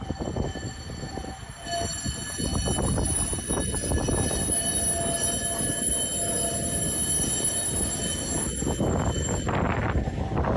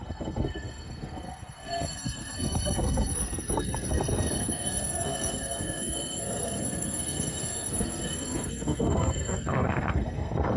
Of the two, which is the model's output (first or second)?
second